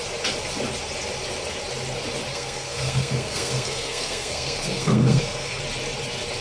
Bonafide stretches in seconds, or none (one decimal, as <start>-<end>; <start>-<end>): 0.0-2.3; 5.6-6.4